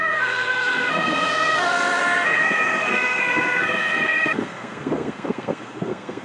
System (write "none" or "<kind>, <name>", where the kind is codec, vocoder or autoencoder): codec, SNAC